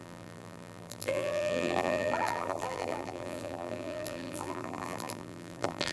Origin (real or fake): fake